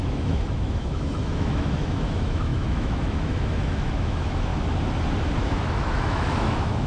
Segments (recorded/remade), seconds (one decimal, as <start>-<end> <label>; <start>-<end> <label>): 0.0-4.5 remade; 4.5-5.4 recorded; 5.4-6.9 remade